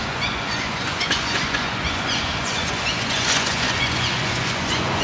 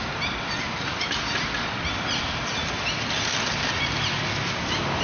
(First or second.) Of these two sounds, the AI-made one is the first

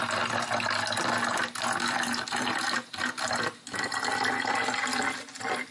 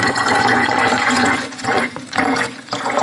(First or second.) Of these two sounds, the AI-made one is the second